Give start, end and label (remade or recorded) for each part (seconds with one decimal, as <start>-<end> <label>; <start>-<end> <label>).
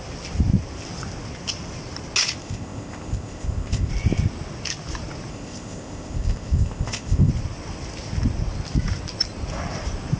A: 0.0-2.4 recorded; 2.4-3.9 remade; 3.9-5.3 recorded; 5.3-7.3 remade; 7.3-10.2 recorded